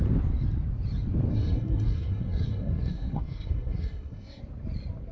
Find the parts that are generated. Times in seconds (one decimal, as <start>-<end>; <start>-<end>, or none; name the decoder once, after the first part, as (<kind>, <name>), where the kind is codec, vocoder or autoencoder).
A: 1.3-4.4 (codec, SNAC)